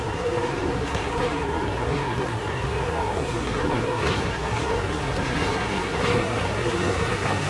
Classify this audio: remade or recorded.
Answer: remade